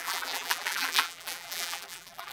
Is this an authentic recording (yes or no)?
no